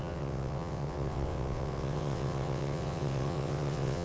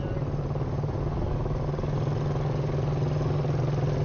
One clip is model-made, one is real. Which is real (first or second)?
second